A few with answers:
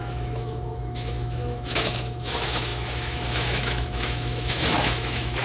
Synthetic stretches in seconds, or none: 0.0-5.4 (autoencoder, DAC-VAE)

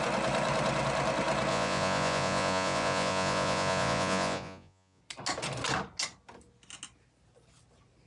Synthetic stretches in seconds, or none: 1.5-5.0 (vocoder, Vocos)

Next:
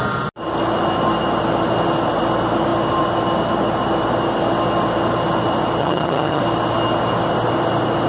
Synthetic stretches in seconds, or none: 5.8-6.4 (vocoder, HiFi-GAN)

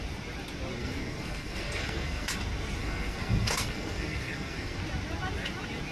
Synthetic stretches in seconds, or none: 0.8-2.3 (codec, SNAC); 2.8-4.8